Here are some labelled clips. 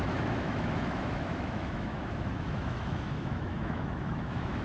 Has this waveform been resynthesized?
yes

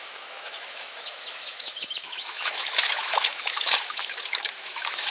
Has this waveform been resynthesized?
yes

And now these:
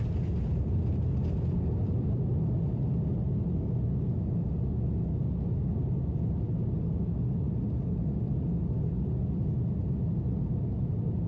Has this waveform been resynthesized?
no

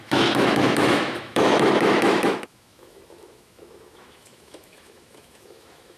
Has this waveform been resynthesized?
yes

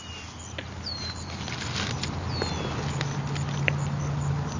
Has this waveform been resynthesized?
no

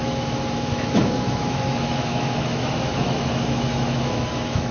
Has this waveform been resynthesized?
yes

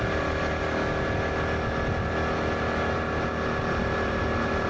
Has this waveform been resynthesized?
no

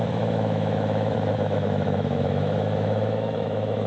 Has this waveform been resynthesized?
yes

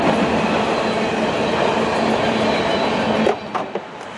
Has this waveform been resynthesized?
no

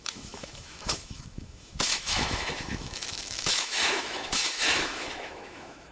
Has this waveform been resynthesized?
yes